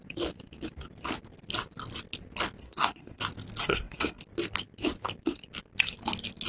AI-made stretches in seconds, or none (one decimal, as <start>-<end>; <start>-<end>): 2.6-3.2; 3.6-4.2